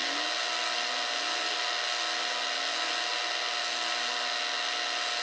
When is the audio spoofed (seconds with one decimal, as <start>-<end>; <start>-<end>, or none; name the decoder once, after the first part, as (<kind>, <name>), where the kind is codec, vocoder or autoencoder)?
none